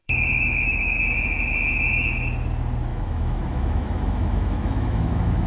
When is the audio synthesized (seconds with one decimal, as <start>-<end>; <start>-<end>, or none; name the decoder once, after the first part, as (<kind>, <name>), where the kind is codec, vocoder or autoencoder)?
0.0-1.0 (autoencoder, DAC-VAE); 2.9-5.5